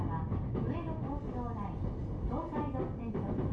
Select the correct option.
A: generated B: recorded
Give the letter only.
B